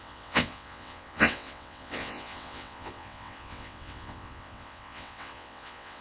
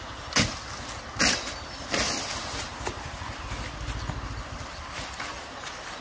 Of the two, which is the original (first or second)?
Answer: second